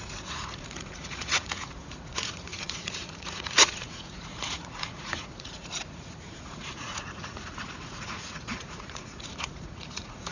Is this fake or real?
fake